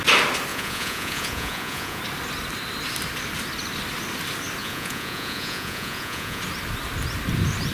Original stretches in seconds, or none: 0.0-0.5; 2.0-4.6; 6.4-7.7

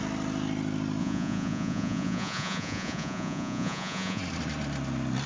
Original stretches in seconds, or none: 0.0-1.0; 4.2-5.3

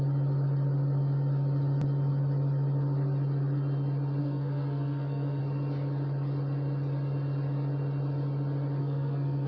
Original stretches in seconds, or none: 0.0-4.2; 5.4-8.8

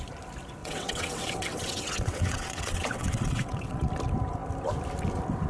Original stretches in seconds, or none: 0.0-0.6; 3.9-5.5